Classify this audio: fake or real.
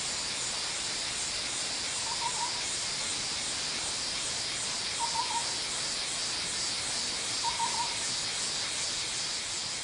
real